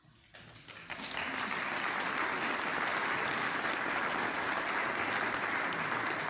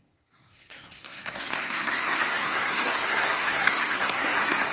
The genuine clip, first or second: first